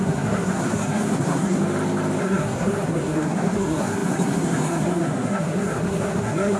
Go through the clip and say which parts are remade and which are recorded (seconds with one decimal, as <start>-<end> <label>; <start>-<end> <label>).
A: 0.0-1.6 remade; 1.6-2.2 recorded; 2.2-6.6 remade